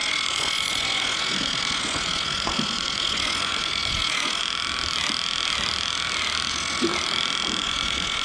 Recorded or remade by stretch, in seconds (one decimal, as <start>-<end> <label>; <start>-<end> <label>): 0.0-4.4 remade; 4.4-6.5 recorded; 6.5-6.9 remade; 6.9-7.6 recorded; 7.6-8.2 remade